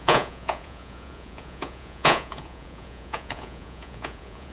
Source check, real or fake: fake